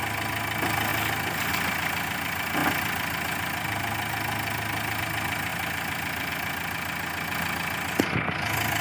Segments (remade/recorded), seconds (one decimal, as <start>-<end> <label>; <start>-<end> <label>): 0.0-5.5 recorded; 5.5-6.3 remade; 6.3-8.8 recorded